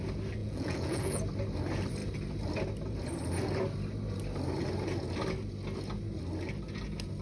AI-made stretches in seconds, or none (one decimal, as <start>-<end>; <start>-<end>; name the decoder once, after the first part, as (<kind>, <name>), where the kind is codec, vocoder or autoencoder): 0.4-1.2 (vocoder, Vocos)

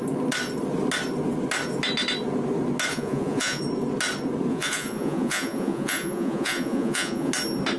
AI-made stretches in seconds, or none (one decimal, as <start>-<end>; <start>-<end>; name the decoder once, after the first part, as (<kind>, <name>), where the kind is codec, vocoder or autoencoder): 2.9-3.6 (vocoder, Vocos); 4.5-7.3